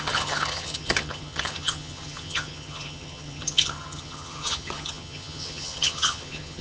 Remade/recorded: remade